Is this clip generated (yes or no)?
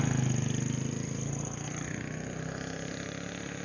no